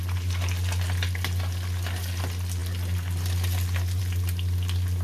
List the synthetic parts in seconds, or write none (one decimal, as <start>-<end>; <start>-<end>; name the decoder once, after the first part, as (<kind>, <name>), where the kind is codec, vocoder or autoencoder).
none